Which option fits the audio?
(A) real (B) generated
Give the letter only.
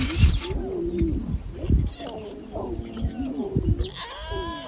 A